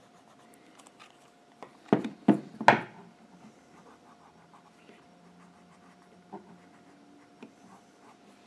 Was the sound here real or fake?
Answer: real